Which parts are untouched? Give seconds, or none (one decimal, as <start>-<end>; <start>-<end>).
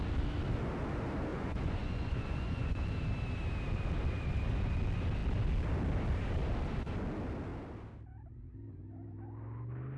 0.0-1.3; 2.8-10.0